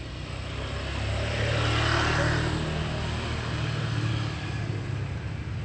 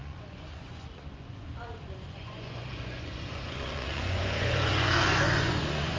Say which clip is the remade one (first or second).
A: second